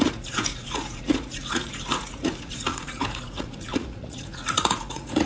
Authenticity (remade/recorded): remade